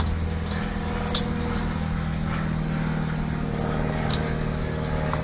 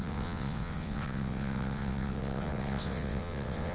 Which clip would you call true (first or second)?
first